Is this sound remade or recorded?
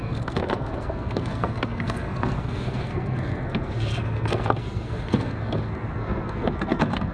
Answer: remade